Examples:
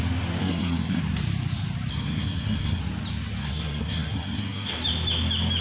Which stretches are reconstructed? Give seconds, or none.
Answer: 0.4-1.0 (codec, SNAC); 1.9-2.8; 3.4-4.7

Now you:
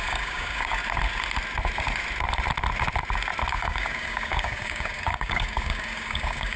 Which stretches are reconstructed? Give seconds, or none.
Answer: 0.0-0.8 (codec, DAC); 3.5-6.6